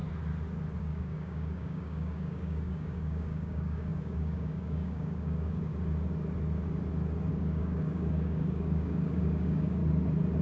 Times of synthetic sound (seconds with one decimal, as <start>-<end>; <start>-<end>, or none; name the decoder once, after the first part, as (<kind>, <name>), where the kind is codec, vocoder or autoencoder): 0.8-5.7 (codec, DAC); 7.3-9.8